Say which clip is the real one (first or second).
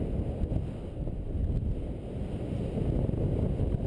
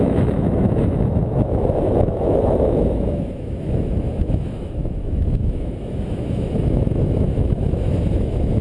first